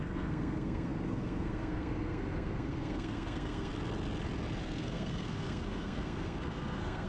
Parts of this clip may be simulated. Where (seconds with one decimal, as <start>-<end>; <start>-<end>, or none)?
0.0-3.7; 4.6-7.1